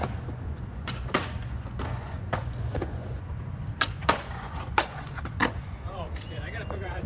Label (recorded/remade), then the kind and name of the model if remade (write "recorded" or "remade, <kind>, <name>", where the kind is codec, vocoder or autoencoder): remade, vocoder, Vocos